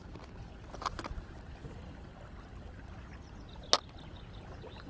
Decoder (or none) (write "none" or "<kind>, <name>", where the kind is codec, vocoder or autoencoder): none